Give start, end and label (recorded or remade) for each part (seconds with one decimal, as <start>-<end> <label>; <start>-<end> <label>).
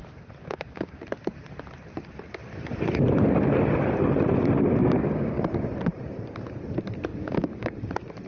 0.0-0.4 recorded; 0.4-1.0 remade; 1.0-4.8 recorded; 4.8-5.4 remade; 5.4-7.1 recorded; 7.1-7.9 remade; 7.9-8.3 recorded